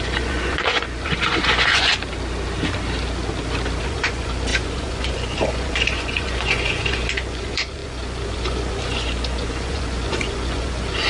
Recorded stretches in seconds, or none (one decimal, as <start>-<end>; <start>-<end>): 1.9-3.8